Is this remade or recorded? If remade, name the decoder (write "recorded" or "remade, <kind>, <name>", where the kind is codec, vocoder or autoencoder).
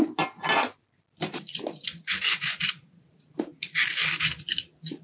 recorded